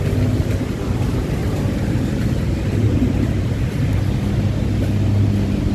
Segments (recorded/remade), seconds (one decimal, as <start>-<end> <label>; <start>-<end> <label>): 0.0-1.4 recorded; 1.4-3.9 remade; 3.9-5.7 recorded